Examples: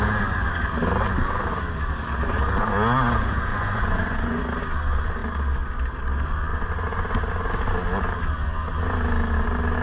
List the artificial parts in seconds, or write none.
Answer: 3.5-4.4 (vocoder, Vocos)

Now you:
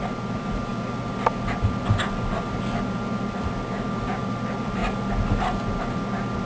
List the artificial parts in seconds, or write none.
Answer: none

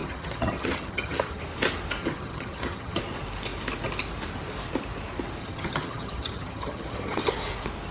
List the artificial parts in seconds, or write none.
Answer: 0.0-1.4 (vocoder, HiFi-GAN); 2.0-3.0; 5.4-7.3

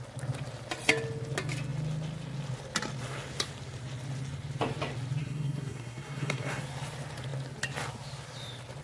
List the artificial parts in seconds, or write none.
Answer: 5.2-6.6 (codec, SNAC)